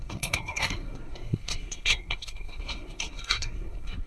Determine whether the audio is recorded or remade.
remade